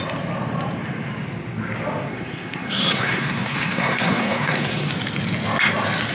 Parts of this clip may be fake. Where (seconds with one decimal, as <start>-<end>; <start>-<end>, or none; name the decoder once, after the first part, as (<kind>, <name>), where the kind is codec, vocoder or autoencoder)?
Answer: 2.1-4.9 (codec, SNAC)